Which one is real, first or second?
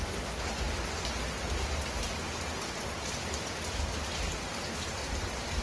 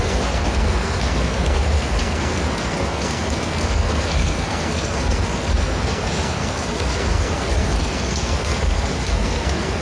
first